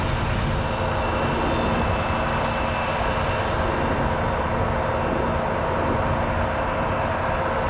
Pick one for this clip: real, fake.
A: real